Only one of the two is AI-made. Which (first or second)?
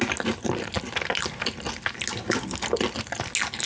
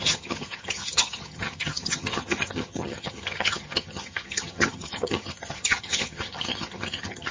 second